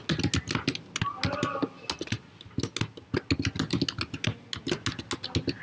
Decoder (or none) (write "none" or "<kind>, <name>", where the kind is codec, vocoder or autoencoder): none